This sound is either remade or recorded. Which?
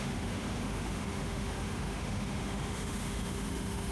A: remade